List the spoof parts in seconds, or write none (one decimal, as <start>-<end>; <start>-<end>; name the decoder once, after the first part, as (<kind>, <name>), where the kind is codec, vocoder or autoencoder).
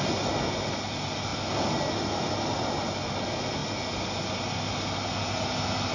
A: none